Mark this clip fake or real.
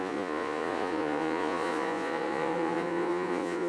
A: fake